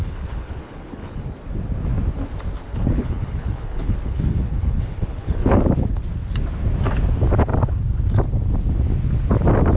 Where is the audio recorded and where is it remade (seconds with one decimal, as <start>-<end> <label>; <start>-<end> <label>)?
0.0-1.3 remade; 1.3-2.7 recorded; 2.7-5.6 remade; 5.6-9.8 recorded